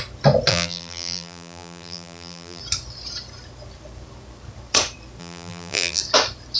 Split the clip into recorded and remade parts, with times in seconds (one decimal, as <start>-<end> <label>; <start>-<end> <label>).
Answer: 0.0-0.5 recorded; 0.5-2.6 remade; 2.6-5.2 recorded; 5.2-6.0 remade; 6.0-6.6 recorded